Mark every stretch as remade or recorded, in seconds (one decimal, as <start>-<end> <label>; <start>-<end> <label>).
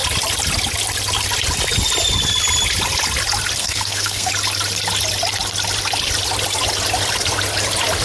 0.0-3.6 recorded; 3.6-4.3 remade; 4.3-8.0 recorded